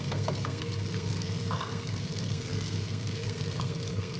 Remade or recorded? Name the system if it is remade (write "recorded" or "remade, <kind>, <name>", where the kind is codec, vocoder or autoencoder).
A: remade, codec, SNAC